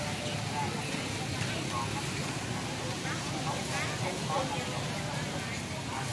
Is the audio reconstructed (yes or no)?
no